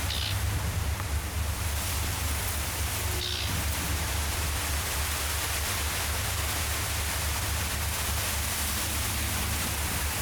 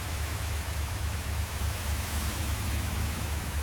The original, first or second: first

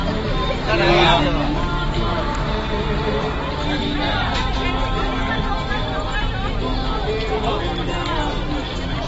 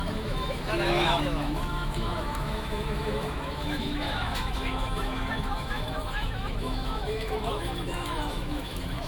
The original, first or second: first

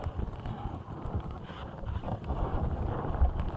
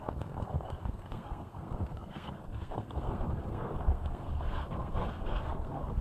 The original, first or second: first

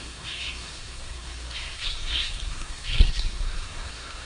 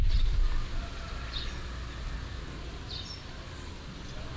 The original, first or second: second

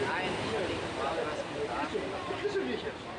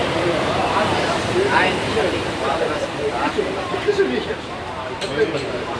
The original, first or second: first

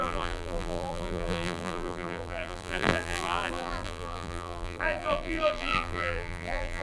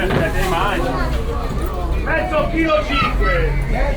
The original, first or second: second